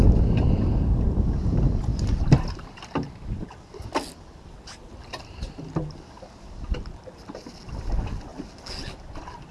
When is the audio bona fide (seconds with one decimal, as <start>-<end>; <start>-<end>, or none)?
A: 0.0-1.9; 3.1-9.5